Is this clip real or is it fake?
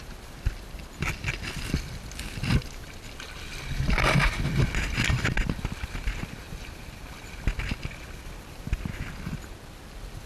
real